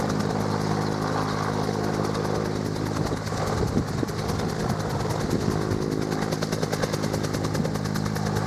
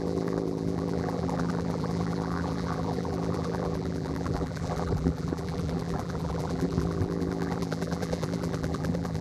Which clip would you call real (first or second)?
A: first